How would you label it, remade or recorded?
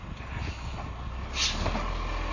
recorded